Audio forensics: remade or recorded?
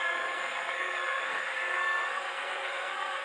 remade